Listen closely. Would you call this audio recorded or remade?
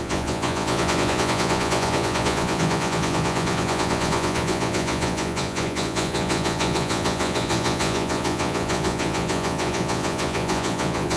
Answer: remade